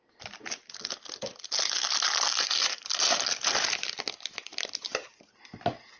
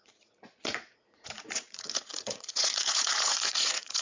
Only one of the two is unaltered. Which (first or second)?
first